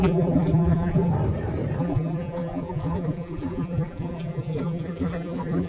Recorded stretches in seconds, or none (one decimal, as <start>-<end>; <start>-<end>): 1.1-1.8